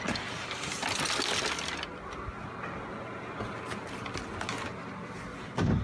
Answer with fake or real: real